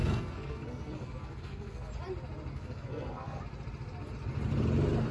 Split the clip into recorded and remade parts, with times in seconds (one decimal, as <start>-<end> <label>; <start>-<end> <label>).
0.0-1.9 remade; 1.9-2.5 recorded; 2.5-3.4 remade; 3.4-5.1 recorded